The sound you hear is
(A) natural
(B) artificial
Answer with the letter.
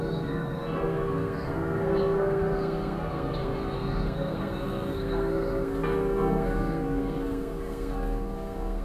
B